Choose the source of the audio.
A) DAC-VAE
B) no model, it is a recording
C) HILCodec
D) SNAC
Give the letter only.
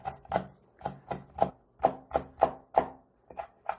B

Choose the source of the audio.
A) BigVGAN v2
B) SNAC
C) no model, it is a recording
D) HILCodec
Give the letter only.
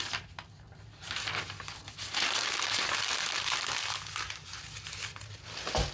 C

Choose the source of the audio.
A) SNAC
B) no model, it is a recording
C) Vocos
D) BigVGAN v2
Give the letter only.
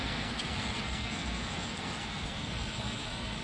A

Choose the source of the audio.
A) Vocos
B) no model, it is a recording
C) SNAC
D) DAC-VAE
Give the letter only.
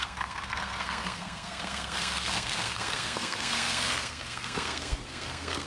C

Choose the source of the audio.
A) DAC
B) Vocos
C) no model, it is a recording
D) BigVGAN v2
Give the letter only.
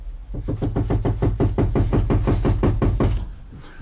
C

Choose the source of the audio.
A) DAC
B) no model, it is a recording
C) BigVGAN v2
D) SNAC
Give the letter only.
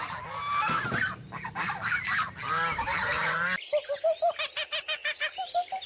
B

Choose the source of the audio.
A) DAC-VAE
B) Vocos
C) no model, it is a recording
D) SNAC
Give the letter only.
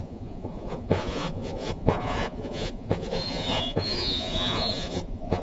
B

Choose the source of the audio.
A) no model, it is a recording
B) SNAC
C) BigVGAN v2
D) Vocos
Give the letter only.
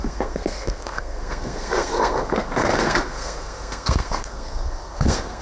B